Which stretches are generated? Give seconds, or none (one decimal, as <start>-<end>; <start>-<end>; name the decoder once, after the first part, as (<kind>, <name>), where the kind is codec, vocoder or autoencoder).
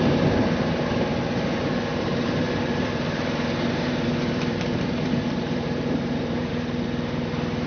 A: 1.9-6.5 (vocoder, BigVGAN v2)